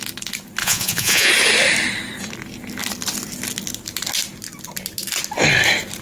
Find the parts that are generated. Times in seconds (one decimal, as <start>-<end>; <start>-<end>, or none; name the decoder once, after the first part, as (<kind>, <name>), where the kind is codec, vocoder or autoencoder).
0.6-1.3 (vocoder, Vocos)